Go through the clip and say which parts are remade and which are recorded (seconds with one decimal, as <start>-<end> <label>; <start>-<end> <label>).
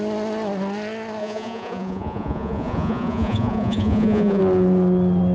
0.0-1.2 recorded; 1.2-4.4 remade; 4.4-5.3 recorded